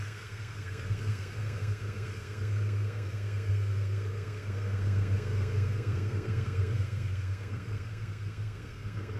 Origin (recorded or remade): remade